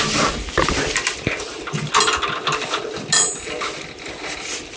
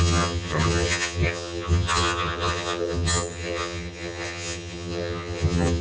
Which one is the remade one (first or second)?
second